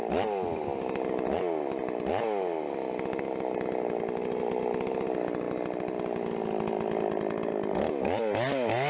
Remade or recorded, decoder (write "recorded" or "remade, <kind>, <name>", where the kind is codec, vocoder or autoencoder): recorded